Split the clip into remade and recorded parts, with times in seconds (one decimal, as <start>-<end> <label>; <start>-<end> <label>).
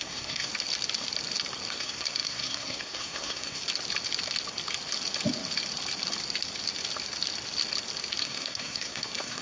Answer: 0.0-0.5 remade; 0.5-1.7 recorded; 1.7-3.6 remade; 3.6-8.2 recorded; 8.2-9.4 remade